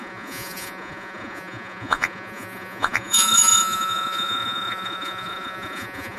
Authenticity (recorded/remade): remade